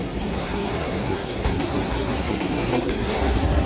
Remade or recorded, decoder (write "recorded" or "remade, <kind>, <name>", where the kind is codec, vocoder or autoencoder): remade, codec, SNAC